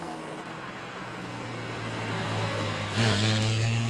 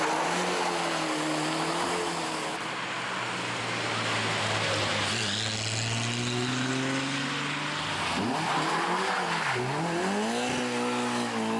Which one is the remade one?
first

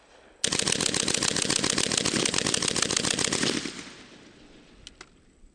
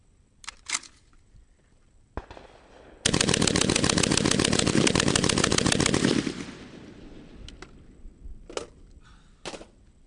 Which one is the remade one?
second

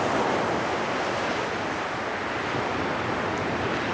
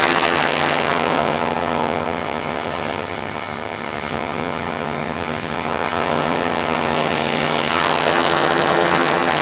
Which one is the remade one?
second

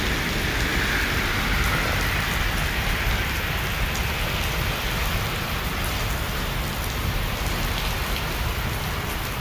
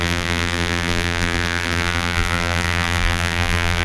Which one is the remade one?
second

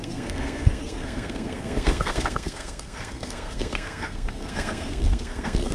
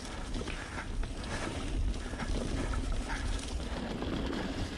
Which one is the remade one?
first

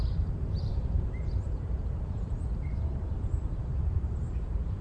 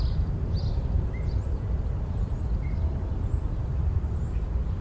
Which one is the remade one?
first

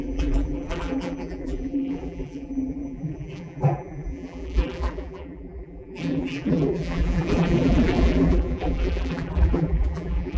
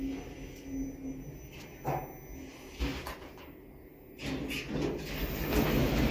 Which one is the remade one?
first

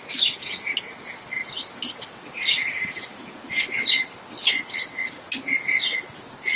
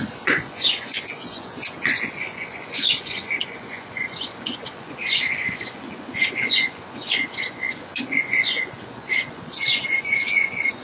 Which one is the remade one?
second